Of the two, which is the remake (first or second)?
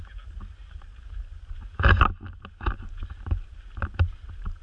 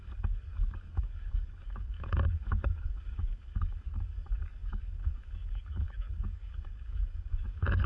second